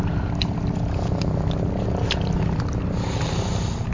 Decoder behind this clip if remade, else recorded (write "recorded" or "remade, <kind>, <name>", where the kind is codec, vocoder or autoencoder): recorded